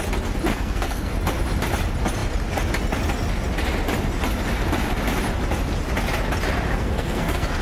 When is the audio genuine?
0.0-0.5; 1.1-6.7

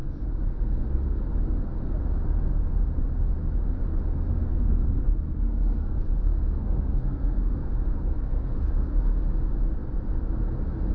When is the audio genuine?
1.2-4.4; 9.1-10.9

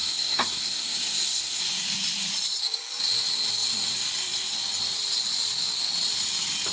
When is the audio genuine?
1.6-6.7

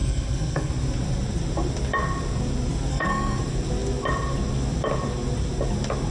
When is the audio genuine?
0.7-2.9; 3.4-6.1

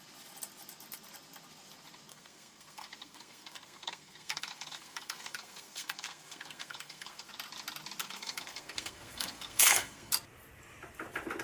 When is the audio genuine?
0.0-2.1; 7.3-8.0; 10.1-11.4

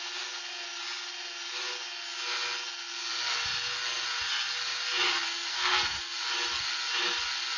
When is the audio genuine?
0.0-5.5; 6.0-7.6

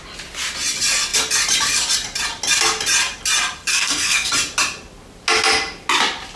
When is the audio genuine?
0.0-3.7; 4.3-6.4

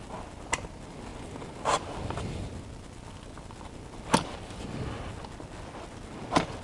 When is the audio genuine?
0.0-6.6